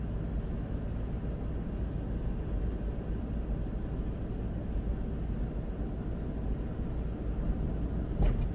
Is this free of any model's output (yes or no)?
yes